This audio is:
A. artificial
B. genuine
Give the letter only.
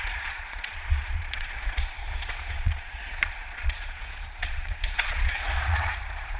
A